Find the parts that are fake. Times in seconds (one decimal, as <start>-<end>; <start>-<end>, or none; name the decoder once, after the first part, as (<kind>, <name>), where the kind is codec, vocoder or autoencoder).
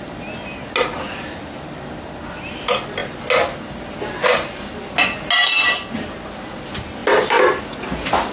none